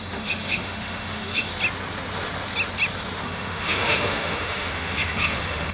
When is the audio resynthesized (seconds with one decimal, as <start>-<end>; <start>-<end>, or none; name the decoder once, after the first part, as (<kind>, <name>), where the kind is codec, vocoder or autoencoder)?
0.0-1.5 (autoencoder, DAC-VAE); 3.2-5.7